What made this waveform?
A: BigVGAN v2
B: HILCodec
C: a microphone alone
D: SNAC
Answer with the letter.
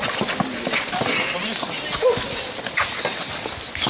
C